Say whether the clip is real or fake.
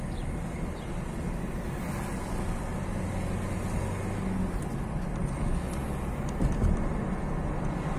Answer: real